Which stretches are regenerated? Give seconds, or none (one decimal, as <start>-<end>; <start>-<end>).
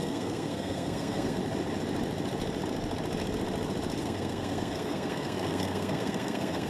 0.0-1.4; 4.0-6.7